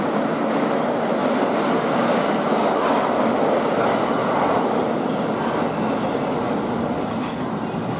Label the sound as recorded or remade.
recorded